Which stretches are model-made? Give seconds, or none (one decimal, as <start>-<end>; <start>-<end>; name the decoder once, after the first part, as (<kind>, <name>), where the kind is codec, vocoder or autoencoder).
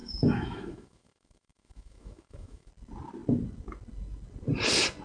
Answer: 0.0-2.7 (autoencoder, DAC-VAE)